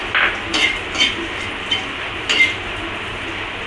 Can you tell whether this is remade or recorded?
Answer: recorded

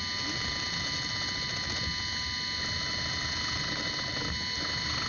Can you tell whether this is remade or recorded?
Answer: recorded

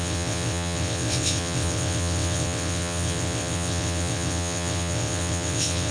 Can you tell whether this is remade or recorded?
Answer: remade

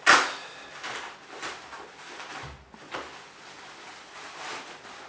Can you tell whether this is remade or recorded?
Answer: recorded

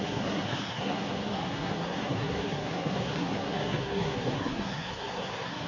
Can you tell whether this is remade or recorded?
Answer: remade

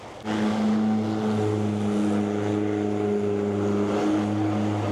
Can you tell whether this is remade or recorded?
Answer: recorded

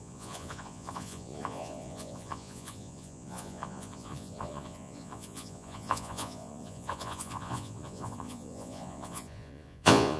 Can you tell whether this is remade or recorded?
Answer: remade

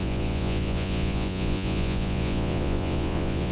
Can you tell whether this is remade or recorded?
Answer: remade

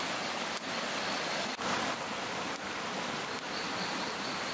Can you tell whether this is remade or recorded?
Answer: recorded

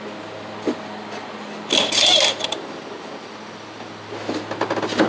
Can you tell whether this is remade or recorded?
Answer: recorded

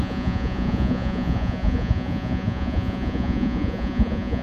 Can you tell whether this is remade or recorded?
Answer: remade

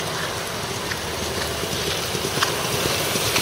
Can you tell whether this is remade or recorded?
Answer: recorded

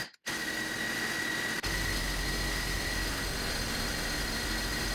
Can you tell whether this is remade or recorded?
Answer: recorded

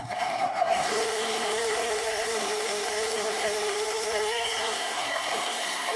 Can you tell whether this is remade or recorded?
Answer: remade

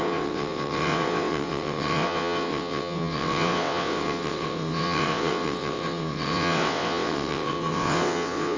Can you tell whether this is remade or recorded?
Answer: remade